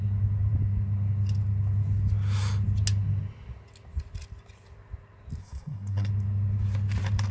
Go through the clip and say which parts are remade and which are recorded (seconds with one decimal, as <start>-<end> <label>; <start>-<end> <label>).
0.0-5.4 recorded; 5.4-6.1 remade; 6.1-7.3 recorded